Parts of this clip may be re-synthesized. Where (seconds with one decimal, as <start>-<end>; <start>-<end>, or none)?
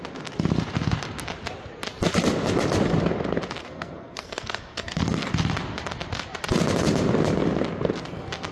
3.6-5.3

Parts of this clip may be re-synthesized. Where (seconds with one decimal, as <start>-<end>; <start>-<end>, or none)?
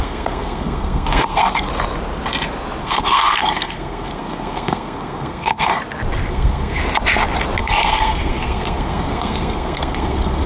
0.0-1.7; 2.8-5.7; 6.3-6.8; 7.6-10.5